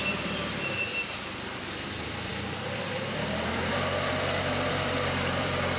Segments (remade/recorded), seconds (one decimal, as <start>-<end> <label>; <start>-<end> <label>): 0.0-5.8 remade